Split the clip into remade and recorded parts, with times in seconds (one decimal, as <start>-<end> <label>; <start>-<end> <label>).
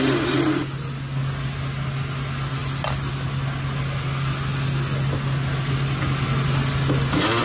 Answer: 0.0-7.4 recorded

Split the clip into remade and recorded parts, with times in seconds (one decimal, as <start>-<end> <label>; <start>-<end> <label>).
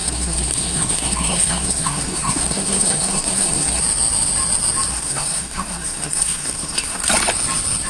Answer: 0.0-3.8 remade; 3.8-4.9 recorded; 4.9-7.1 remade; 7.1-7.9 recorded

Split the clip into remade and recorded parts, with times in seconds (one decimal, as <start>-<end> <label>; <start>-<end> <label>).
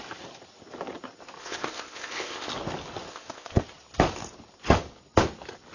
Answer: 0.0-1.4 recorded; 1.4-2.5 remade; 2.5-3.1 recorded; 3.1-3.6 remade; 3.6-5.7 recorded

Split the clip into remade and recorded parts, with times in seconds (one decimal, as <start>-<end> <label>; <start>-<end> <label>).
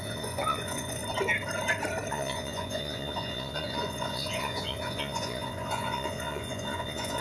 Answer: 0.0-1.0 remade; 1.0-2.1 recorded; 2.1-7.2 remade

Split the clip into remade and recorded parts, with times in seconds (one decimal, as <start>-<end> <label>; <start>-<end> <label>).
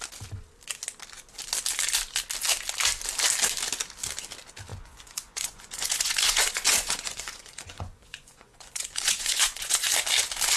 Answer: 0.0-4.7 recorded; 4.7-9.9 remade; 9.9-10.6 recorded